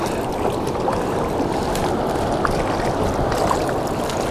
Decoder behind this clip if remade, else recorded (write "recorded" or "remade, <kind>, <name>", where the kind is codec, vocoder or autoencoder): recorded